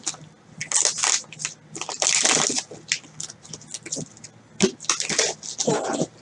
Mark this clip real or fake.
real